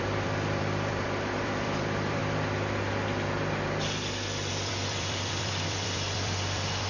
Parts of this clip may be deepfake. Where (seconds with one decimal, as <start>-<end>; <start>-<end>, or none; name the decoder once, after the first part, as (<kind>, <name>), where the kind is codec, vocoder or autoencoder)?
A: 0.0-2.2 (vocoder, BigVGAN v2); 4.5-6.9